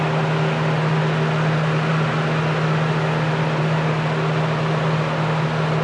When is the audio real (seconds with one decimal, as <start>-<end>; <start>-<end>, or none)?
0.0-5.8